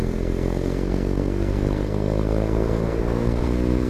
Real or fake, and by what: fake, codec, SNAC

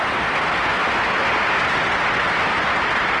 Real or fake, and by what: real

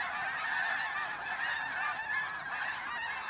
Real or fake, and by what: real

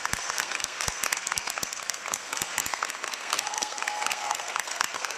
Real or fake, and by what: fake, codec, SNAC